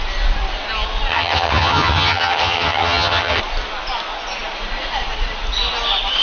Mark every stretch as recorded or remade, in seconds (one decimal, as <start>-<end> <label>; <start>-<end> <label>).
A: 0.0-1.1 recorded; 1.1-3.4 remade; 3.4-6.2 recorded